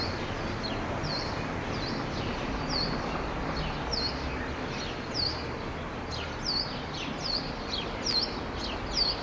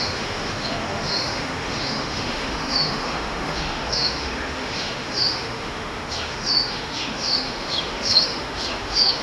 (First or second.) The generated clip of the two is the second